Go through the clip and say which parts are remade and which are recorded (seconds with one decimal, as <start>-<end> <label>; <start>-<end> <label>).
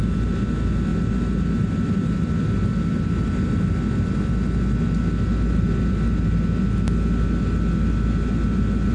0.0-8.9 recorded